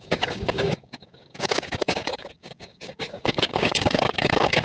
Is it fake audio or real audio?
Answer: fake